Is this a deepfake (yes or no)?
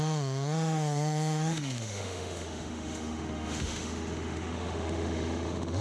yes